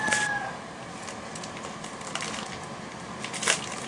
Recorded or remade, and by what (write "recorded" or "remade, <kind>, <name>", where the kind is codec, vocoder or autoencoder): recorded